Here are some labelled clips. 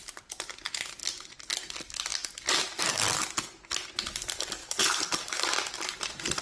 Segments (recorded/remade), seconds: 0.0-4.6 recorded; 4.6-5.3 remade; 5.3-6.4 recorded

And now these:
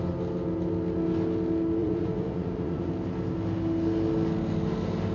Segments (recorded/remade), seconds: 0.0-1.8 recorded; 1.8-2.9 remade; 2.9-5.1 recorded

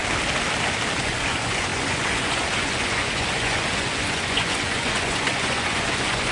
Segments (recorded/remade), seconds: 0.0-1.0 recorded; 1.0-6.3 remade

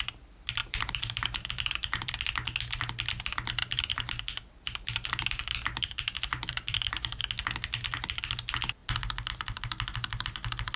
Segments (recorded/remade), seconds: 0.0-0.6 recorded; 0.6-2.1 remade; 2.1-3.6 recorded; 3.6-7.2 remade; 7.2-10.8 recorded

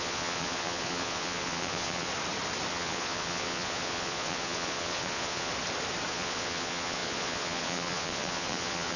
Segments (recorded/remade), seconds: 0.0-2.1 remade; 2.1-2.7 recorded; 2.7-5.5 remade; 5.5-6.1 recorded; 6.1-9.0 remade